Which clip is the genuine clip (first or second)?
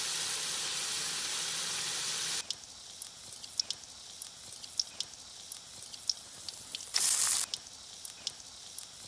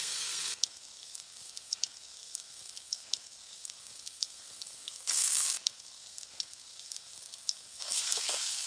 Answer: first